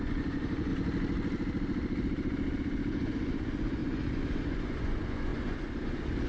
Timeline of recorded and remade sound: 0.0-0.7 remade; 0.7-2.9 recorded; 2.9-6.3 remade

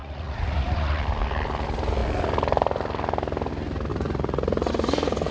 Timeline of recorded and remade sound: 0.0-1.0 remade; 1.0-3.9 recorded; 3.9-4.7 remade; 4.7-5.3 recorded

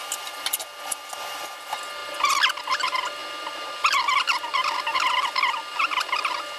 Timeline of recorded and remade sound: 0.0-6.6 recorded

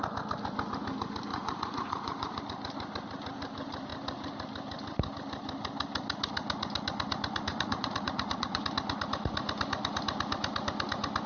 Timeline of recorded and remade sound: 0.0-1.3 recorded; 1.3-2.4 remade; 2.4-7.5 recorded; 7.5-8.6 remade; 8.6-11.3 recorded

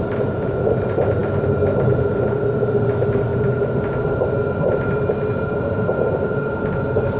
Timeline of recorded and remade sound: 0.0-7.2 recorded

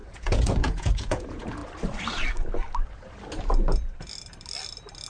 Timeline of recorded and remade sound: 0.0-1.6 remade; 1.6-5.1 recorded

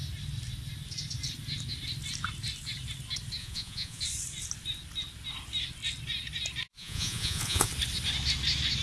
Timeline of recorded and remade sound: 0.0-3.4 recorded; 3.4-4.0 remade; 4.0-6.7 recorded; 6.7-7.7 remade; 7.7-8.8 recorded

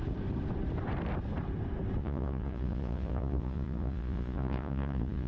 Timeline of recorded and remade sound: 0.0-2.0 recorded; 2.0-5.3 remade